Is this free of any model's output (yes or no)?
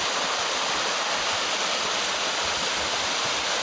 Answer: yes